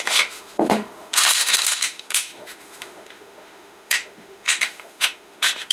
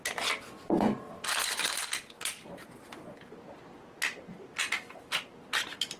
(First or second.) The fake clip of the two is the first